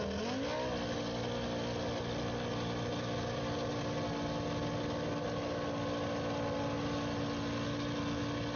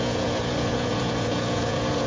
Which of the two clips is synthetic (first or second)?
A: second